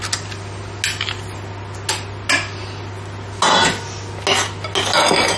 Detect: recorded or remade recorded